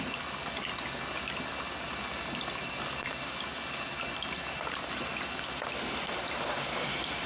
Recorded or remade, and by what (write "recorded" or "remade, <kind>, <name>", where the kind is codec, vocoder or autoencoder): recorded